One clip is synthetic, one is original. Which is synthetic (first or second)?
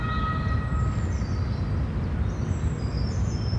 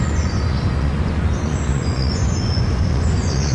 second